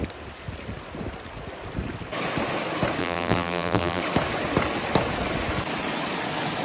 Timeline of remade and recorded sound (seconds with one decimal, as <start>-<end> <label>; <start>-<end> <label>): 0.0-3.0 recorded; 3.0-4.0 remade; 4.0-6.6 recorded